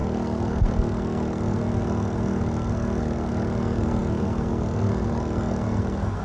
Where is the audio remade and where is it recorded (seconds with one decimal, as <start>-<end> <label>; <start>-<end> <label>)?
0.0-6.2 remade